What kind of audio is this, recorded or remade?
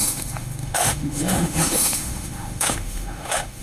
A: remade